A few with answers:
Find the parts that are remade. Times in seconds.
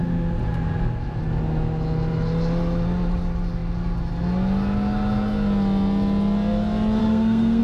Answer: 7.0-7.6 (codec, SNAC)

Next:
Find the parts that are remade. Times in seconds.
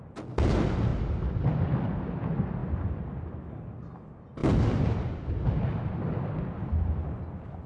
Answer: none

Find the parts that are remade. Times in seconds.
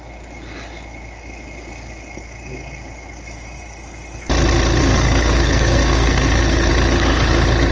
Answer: 4.8-6.7 (codec, SNAC)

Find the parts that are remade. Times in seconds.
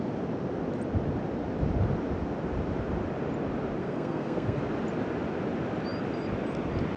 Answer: 3.8-4.6 (codec, SNAC)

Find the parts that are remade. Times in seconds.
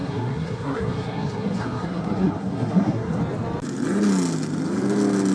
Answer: 0.0-3.2 (codec, SNAC)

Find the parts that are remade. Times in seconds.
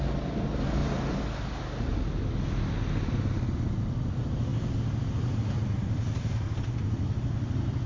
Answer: none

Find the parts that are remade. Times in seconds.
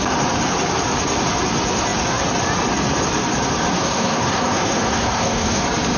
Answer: 3.7-5.6 (codec, SNAC)